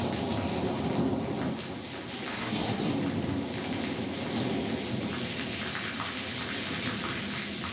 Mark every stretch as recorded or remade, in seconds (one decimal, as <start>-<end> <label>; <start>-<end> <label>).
0.0-2.3 recorded; 2.3-2.9 remade; 2.9-7.7 recorded